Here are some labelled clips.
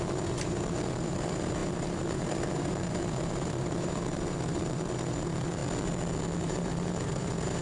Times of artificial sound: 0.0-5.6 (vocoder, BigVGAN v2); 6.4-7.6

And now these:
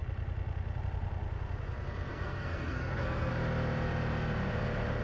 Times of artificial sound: 2.1-3.3 (codec, SNAC)

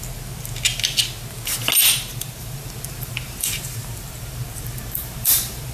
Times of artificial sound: 2.1-5.7 (vocoder, BigVGAN v2)

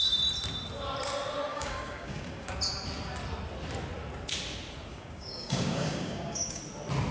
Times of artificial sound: 1.5-2.5 (codec, DAC); 4.9-6.6

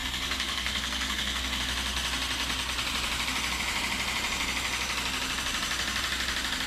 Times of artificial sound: 0.0-1.6 (codec, SNAC)

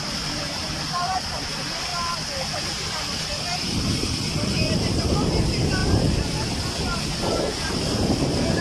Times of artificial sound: 0.0-1.9 (vocoder, BigVGAN v2); 4.5-5.8; 7.7-8.6

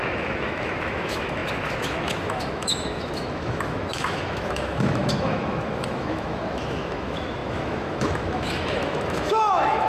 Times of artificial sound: 0.0-9.9 (autoencoder, DAC-VAE)

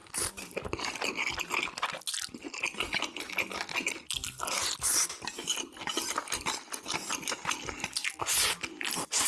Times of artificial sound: none